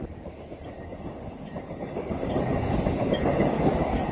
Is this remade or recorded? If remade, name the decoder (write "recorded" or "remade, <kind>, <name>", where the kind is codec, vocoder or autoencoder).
remade, codec, DAC